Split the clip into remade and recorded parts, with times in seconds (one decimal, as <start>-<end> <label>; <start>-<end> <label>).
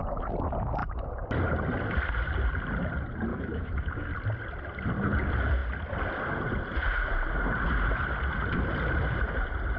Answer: 0.0-3.3 recorded; 3.3-4.1 remade; 4.1-9.8 recorded